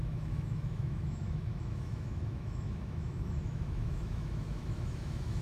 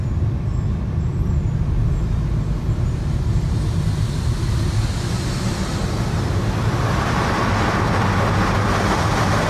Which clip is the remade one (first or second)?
first